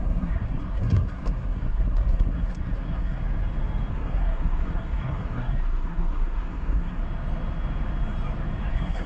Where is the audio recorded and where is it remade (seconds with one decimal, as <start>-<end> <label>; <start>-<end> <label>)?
0.0-3.2 remade; 3.2-3.9 recorded; 3.9-7.0 remade; 7.0-8.7 recorded; 8.7-9.1 remade